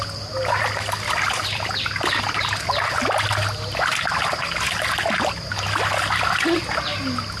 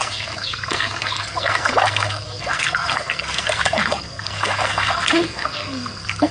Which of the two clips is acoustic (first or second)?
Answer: first